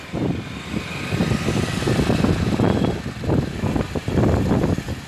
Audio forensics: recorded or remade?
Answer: recorded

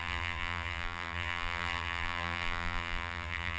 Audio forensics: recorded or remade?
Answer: remade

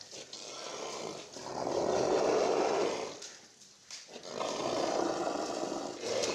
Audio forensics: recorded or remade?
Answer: recorded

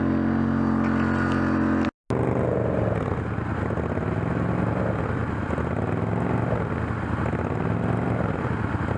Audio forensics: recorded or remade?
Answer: recorded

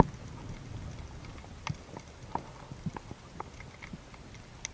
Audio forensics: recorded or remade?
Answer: recorded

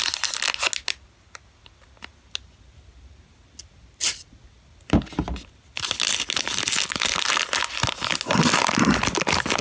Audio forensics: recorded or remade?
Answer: recorded